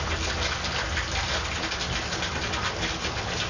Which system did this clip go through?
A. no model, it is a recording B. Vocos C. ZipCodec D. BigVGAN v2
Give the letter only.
A